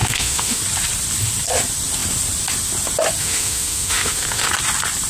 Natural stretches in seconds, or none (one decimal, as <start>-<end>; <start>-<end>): 0.6-3.2; 4.5-5.1